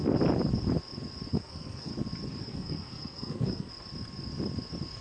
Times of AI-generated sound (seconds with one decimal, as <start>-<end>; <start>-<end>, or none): 1.3-1.9; 2.4-3.7